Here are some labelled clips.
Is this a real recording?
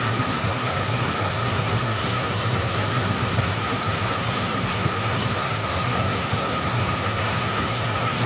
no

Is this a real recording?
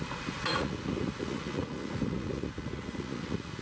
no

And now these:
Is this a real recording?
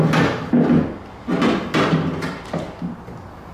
yes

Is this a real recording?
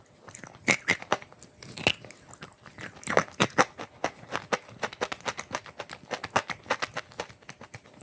yes